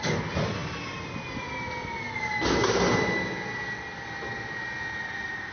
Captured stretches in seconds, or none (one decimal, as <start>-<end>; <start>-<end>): 0.0-5.5